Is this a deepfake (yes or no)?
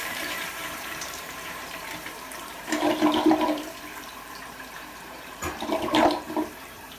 yes